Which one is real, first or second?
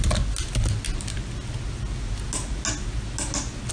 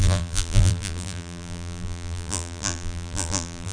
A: first